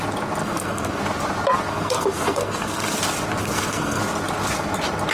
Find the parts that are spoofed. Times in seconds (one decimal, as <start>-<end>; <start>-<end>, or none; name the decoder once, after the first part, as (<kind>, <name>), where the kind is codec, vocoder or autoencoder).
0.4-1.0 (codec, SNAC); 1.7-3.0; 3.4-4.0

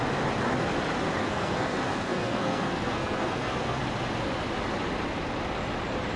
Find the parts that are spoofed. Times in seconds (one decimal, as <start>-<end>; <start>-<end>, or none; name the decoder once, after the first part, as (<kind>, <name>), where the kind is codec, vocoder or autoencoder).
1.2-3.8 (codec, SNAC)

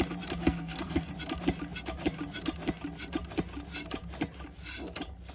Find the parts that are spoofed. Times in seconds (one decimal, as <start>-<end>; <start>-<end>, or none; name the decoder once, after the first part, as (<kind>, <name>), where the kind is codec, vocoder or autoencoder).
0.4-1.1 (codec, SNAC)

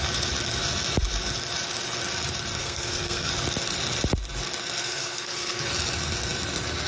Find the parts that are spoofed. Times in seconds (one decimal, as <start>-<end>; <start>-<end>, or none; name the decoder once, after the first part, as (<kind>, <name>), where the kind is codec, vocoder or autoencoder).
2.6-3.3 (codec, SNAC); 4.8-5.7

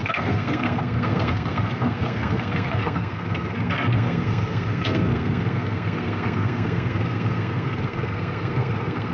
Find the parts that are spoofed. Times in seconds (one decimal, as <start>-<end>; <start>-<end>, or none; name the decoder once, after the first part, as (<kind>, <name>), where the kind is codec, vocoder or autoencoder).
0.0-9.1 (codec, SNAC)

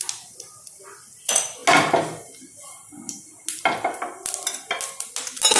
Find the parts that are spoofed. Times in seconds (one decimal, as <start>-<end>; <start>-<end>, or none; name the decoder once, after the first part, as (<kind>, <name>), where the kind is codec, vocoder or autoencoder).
none

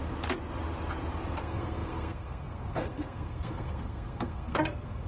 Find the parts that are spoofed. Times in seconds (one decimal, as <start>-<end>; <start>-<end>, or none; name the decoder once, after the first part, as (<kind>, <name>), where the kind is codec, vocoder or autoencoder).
1.4-5.1 (codec, SNAC)

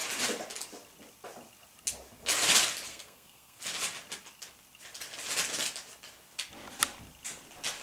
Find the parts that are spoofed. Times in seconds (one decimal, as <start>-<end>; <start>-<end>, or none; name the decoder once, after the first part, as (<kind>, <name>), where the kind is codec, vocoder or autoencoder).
2.9-3.6 (codec, SNAC)